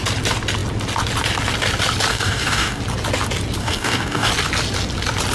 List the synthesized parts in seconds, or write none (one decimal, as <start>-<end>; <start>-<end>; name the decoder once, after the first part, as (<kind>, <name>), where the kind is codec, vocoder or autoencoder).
2.1-2.8 (codec, DAC); 3.6-4.3